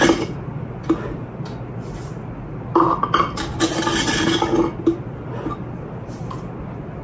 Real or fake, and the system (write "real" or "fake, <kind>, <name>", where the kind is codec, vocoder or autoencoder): real